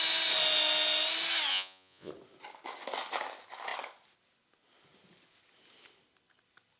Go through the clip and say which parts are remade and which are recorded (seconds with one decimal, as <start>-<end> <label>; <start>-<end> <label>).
0.0-1.5 recorded; 1.5-2.1 remade; 2.1-6.8 recorded